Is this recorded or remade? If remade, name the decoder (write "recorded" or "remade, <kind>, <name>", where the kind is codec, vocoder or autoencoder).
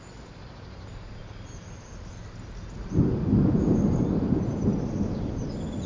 recorded